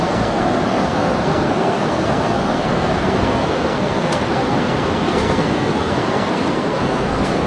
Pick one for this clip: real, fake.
fake